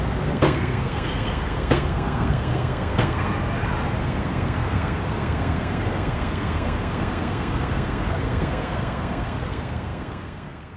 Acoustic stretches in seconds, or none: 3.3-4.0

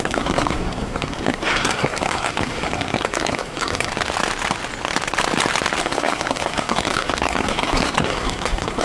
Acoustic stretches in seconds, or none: 3.9-5.8

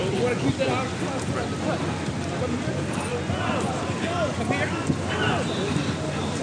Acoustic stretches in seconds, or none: 0.0-6.4

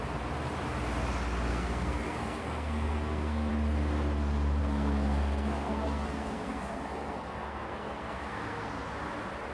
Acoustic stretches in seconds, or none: 0.0-1.5; 3.5-4.6; 8.7-9.5

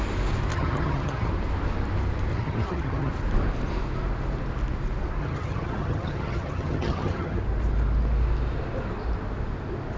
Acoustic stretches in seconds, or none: 0.0-0.5; 1.3-2.3; 3.1-5.2; 7.4-10.0